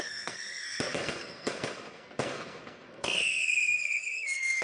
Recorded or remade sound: remade